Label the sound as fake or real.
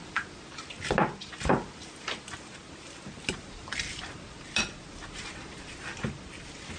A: real